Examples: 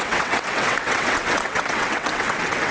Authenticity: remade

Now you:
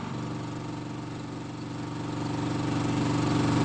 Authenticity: recorded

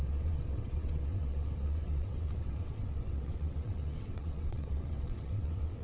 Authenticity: remade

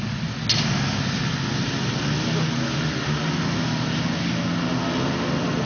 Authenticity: recorded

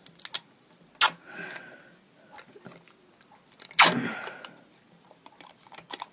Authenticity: recorded